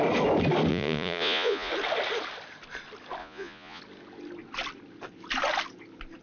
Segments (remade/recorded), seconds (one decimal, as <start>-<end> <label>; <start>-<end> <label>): 0.0-0.7 recorded; 0.7-1.7 remade; 1.7-3.2 recorded; 3.2-3.8 remade; 3.8-6.2 recorded

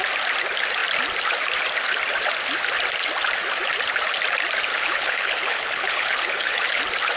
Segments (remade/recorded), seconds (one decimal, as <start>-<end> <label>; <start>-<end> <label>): 0.0-4.7 recorded; 4.7-6.8 remade; 6.8-7.2 recorded

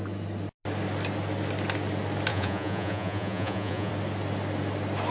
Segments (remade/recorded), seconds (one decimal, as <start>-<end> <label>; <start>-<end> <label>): 0.0-2.3 recorded; 2.3-3.9 remade; 3.9-5.1 recorded

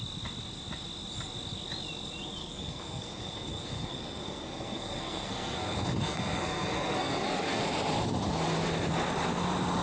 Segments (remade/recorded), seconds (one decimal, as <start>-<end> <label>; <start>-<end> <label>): 0.0-2.4 recorded; 2.4-7.6 remade; 7.6-9.8 recorded

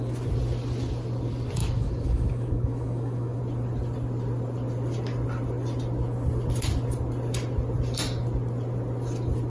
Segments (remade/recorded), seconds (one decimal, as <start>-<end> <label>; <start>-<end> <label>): 0.0-1.6 recorded; 1.6-3.4 remade; 3.4-9.5 recorded

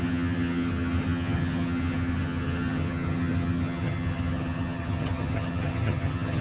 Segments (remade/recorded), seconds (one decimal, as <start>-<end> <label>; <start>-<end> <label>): 0.0-6.4 remade

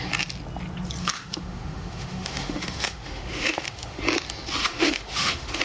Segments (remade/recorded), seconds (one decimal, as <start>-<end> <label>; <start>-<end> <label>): 0.0-1.0 recorded; 1.0-4.0 remade; 4.0-4.6 recorded; 4.6-5.6 remade